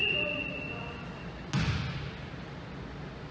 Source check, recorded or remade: recorded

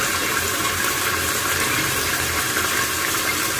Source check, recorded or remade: remade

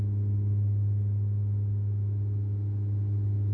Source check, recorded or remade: recorded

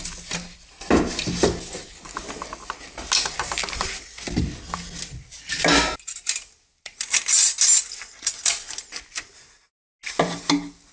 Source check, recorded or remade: recorded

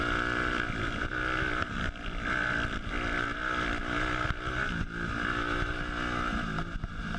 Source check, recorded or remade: recorded